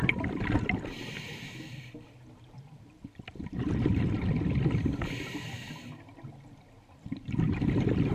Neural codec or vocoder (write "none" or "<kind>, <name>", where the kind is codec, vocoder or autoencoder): none